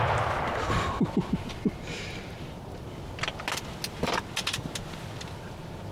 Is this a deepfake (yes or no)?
no